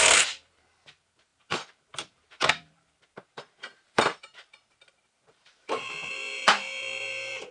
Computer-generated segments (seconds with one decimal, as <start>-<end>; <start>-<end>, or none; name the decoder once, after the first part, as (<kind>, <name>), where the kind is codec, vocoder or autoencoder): 0.0-7.5 (vocoder, BigVGAN v2)